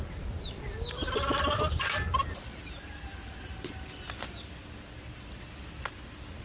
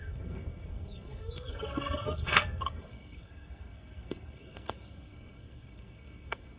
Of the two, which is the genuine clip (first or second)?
first